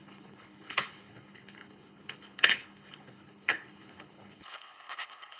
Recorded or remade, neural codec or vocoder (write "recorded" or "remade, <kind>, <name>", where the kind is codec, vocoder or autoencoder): remade, codec, HILCodec